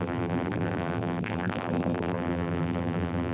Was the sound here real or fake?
fake